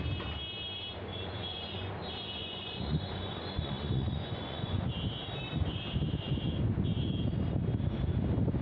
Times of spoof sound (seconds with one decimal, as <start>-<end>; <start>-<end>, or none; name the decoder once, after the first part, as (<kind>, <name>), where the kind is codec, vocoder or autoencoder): 1.1-1.9 (vocoder, Vocos); 2.4-4.9